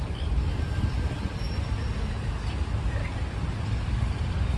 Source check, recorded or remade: recorded